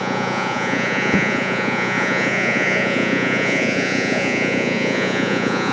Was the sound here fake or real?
fake